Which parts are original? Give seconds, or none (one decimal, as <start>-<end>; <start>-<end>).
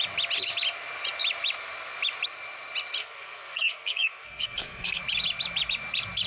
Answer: 0.0-3.0; 5.0-6.3